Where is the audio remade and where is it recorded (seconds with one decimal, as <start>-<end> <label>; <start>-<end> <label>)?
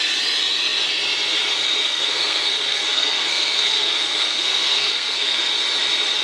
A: 0.0-1.8 recorded; 1.8-5.5 remade; 5.5-6.2 recorded